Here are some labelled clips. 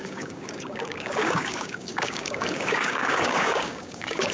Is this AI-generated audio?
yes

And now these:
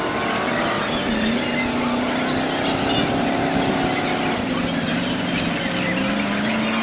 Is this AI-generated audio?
no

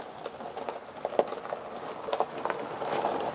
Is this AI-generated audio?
no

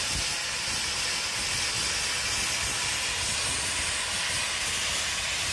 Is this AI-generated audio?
no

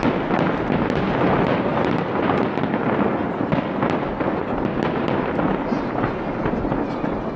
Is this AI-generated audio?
no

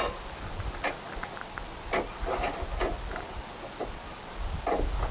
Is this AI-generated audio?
no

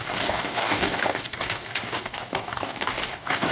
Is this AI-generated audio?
yes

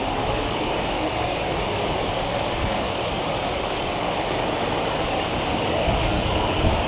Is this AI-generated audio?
yes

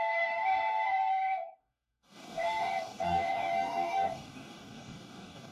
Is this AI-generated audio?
yes